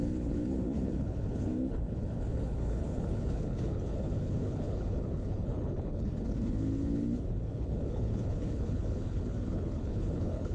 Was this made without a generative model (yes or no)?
no